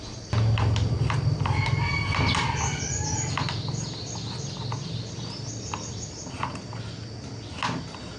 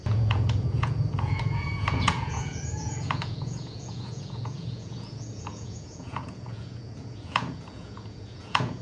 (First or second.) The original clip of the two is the first